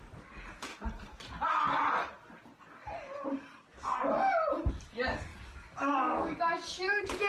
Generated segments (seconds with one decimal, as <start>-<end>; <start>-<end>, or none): 0.0-0.7; 4.7-7.3